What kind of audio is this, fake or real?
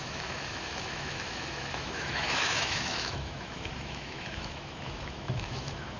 fake